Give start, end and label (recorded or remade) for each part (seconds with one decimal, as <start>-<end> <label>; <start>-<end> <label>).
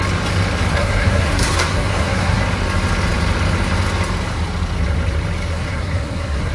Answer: 0.0-0.7 recorded; 0.7-2.4 remade; 2.4-5.5 recorded; 5.5-6.5 remade